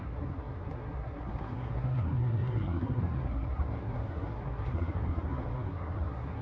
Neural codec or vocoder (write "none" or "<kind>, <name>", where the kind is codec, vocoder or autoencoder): codec, SNAC